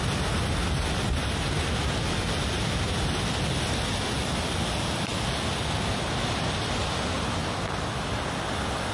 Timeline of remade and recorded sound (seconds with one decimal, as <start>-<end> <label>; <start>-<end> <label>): 0.0-8.9 recorded